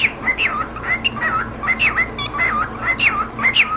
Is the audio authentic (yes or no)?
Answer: yes